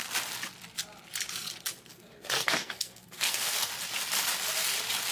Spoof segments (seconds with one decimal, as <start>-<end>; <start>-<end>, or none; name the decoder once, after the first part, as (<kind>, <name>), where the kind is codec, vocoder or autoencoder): 1.9-3.7 (codec, SNAC)